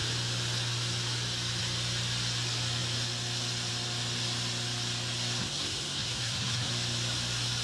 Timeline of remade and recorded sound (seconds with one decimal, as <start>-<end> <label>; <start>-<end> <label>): 0.0-5.4 recorded; 5.4-6.7 remade; 6.7-7.6 recorded